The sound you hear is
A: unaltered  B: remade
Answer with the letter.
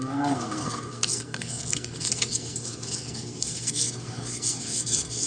B